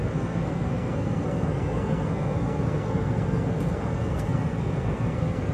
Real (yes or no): no